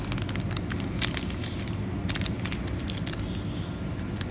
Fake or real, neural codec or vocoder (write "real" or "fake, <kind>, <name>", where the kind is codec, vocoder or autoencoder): real